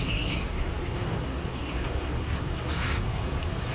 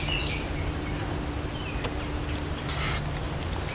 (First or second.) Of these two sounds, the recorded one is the second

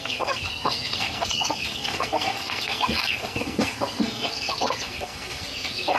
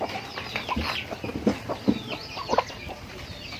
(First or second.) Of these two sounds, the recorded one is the second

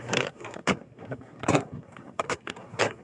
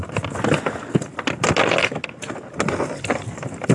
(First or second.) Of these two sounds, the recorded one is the second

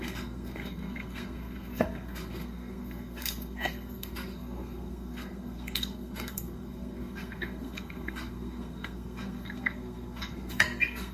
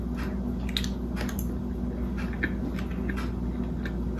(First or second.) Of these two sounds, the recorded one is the second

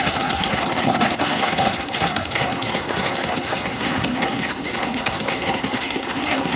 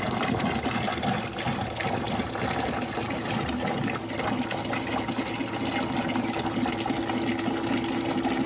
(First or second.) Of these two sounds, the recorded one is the second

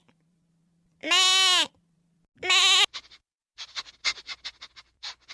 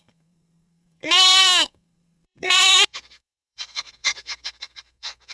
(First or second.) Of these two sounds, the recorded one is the first